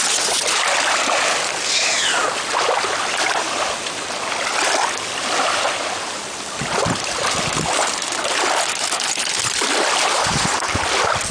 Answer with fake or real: real